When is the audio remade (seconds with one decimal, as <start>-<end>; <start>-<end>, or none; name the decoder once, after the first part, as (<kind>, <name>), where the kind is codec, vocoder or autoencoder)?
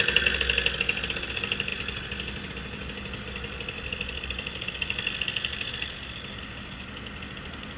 none